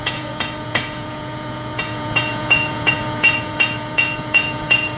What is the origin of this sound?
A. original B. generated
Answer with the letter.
B